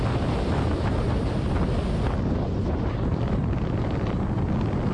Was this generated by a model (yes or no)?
no